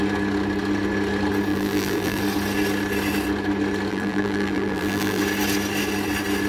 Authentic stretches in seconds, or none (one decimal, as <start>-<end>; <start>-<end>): 0.0-1.5; 2.2-3.9; 5.2-6.5